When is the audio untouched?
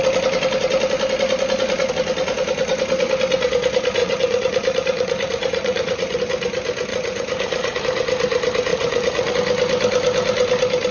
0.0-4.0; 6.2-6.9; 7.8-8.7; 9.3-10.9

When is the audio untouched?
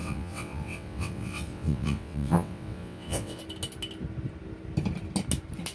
3.4-5.7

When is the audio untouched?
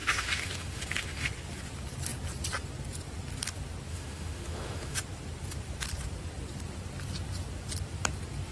1.3-3.9; 5.0-8.5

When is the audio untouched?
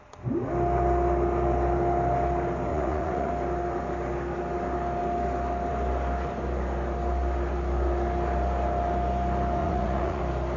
0.0-2.7; 3.3-9.6; 10.2-10.6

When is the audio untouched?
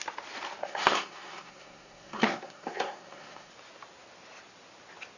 0.0-0.6; 3.5-5.2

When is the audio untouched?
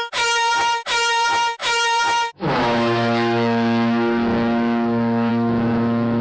none